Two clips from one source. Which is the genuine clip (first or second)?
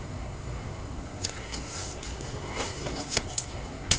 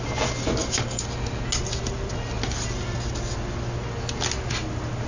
second